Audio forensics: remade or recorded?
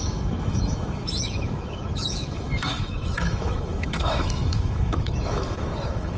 remade